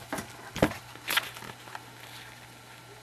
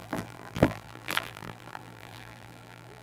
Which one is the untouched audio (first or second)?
first